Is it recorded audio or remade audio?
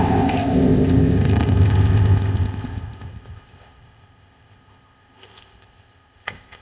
remade